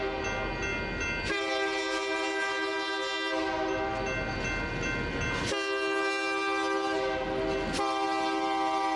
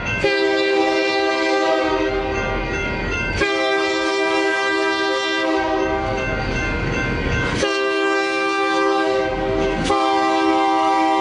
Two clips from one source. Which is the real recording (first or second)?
first